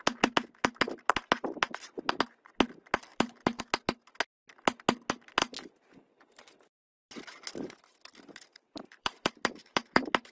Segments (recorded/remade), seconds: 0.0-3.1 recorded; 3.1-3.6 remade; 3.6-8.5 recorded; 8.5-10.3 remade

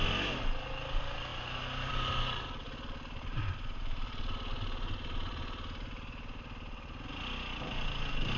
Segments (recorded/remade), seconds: 0.0-8.4 recorded

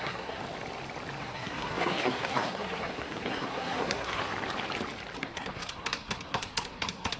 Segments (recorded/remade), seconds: 0.0-0.4 remade; 0.4-1.2 recorded; 1.2-4.2 remade; 4.2-5.2 recorded; 5.2-7.2 remade

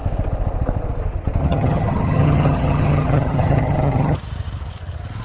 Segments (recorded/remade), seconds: 0.0-1.4 recorded; 1.4-4.2 remade; 4.2-5.2 recorded

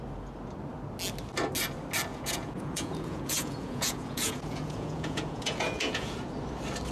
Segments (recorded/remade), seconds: 0.0-2.1 recorded; 2.1-6.1 remade; 6.1-6.9 recorded

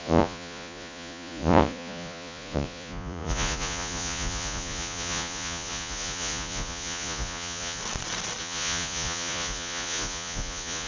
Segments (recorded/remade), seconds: 0.0-7.8 remade; 7.8-8.4 recorded; 8.4-10.9 remade

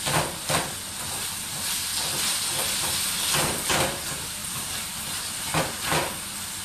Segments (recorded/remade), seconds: 0.0-4.4 recorded; 4.4-5.2 remade; 5.2-6.6 recorded

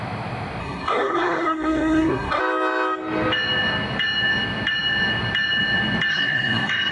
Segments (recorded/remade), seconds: 0.0-0.6 recorded; 0.6-2.4 remade; 2.4-6.1 recorded; 6.1-6.9 remade